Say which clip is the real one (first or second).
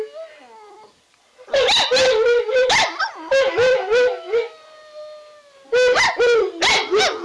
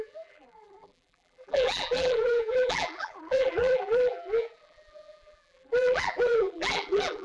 first